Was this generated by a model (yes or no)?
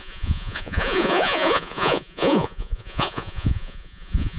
yes